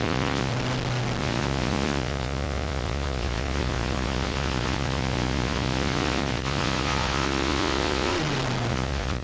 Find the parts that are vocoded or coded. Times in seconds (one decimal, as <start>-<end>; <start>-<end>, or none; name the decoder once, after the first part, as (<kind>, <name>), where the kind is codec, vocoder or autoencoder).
0.0-0.5 (vocoder, Vocos); 1.2-8.1; 8.7-9.2